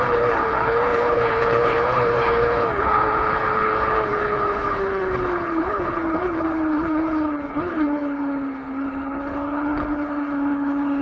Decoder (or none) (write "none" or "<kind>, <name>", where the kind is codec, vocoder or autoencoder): codec, HILCodec